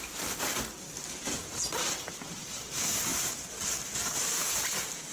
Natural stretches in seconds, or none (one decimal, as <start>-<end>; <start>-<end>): 0.5-1.2